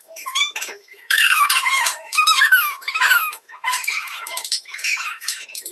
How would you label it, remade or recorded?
remade